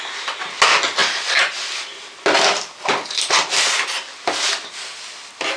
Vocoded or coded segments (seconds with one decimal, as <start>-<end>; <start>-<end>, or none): none